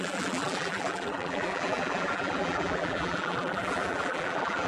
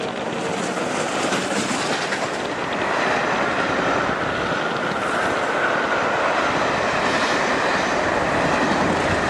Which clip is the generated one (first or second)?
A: first